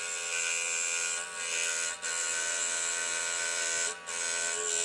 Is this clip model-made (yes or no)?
no